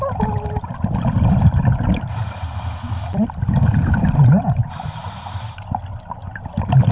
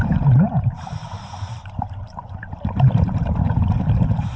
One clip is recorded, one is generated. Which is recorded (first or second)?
first